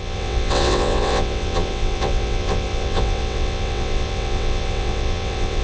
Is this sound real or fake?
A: fake